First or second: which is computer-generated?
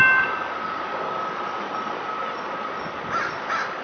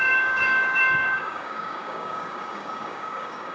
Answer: second